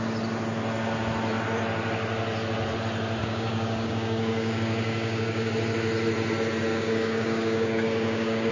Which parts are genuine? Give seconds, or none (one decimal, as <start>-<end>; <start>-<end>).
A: 0.0-3.2; 5.5-6.7